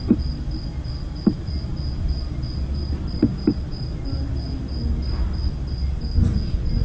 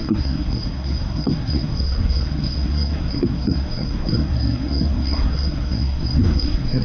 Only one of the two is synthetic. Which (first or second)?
second